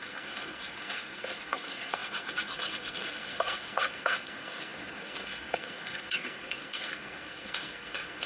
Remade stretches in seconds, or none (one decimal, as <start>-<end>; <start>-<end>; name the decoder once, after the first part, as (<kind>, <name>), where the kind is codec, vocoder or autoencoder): 0.0-8.3 (codec, SNAC)